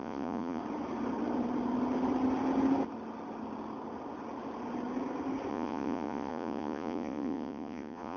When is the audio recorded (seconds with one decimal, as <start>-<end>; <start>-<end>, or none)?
0.6-5.5